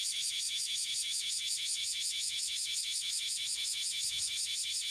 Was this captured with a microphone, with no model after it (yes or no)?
no